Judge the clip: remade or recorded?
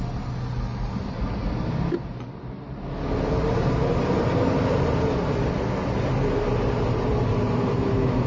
recorded